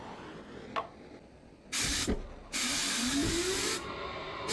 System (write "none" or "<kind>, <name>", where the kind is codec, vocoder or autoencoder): none